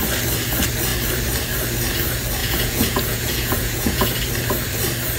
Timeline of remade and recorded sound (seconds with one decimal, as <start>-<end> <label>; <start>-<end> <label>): 0.0-2.4 recorded; 2.4-4.2 remade; 4.2-5.2 recorded